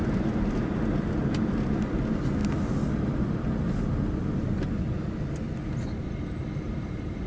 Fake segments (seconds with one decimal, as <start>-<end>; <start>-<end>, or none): none